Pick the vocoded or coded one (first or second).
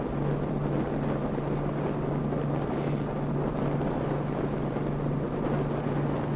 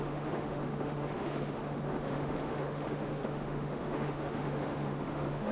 second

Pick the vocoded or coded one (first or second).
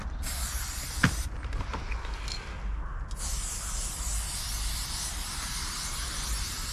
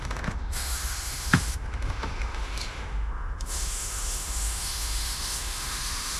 second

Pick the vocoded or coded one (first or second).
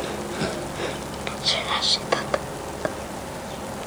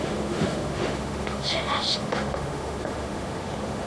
second